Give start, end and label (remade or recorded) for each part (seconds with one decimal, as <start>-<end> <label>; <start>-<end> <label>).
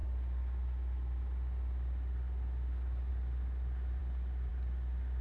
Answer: 0.0-5.2 recorded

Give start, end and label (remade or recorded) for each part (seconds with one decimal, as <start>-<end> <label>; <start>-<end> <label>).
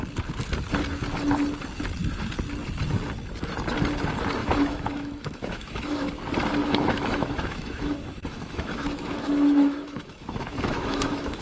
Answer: 0.0-4.4 recorded; 4.4-6.1 remade; 6.1-6.6 recorded; 6.6-11.4 remade